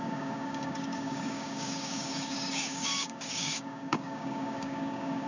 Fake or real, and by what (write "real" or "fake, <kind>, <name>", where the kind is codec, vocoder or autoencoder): fake, codec, DAC